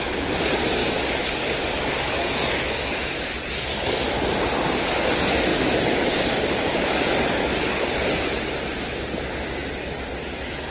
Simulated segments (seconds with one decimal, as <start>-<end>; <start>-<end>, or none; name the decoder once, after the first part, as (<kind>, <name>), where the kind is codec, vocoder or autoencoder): 0.8-4.1 (codec, DAC); 5.5-8.2